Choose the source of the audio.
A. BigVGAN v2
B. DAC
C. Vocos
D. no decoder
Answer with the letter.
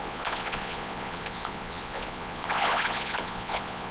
C